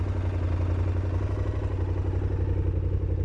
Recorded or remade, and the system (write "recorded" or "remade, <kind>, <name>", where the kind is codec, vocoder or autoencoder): recorded